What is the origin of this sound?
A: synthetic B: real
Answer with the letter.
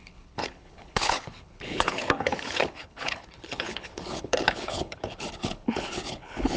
A